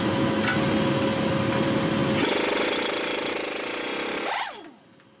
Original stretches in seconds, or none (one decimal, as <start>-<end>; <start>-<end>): 0.0-5.2